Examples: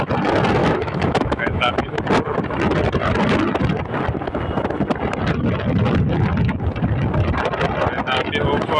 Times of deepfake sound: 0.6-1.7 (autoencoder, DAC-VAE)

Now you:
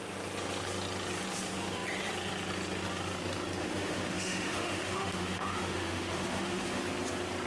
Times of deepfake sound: 3.6-6.8 (autoencoder, DAC-VAE)

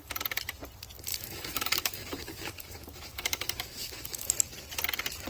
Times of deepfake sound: 1.1-4.3 (autoencoder, DAC-VAE)

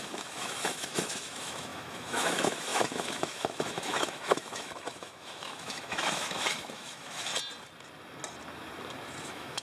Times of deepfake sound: 0.0-7.3 (autoencoder, DAC-VAE); 9.2-9.6

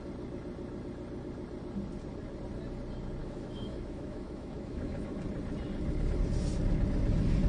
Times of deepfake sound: 3.2-5.2 (autoencoder, DAC-VAE)

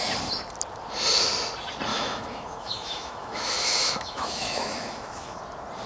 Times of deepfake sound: 1.9-5.4 (autoencoder, DAC-VAE)